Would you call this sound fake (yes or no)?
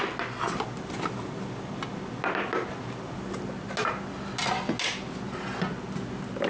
no